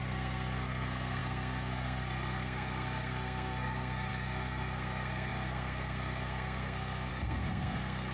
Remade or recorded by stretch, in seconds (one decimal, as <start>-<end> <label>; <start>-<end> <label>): 0.0-8.1 remade